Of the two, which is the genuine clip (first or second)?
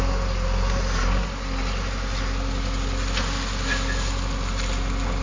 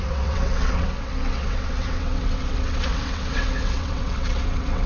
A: first